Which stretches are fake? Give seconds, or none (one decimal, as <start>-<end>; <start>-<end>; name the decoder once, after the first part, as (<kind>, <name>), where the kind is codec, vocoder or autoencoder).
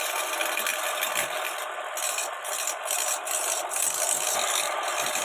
none